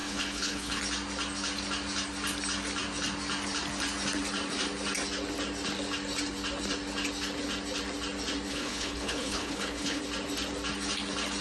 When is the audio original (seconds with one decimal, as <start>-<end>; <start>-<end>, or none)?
0.8-8.5; 10.0-11.4